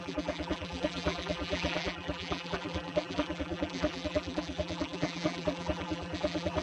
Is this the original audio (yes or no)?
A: no